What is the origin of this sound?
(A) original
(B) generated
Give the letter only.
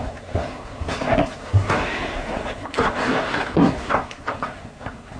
B